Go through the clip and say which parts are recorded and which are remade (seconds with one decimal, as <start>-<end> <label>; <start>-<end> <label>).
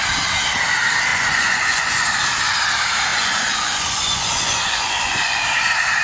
0.0-1.1 recorded; 1.1-2.2 remade; 2.2-3.1 recorded; 3.1-5.6 remade; 5.6-6.0 recorded